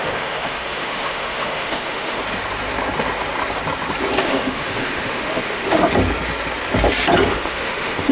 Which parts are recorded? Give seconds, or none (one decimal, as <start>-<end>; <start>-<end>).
2.2-4.2; 5.8-7.3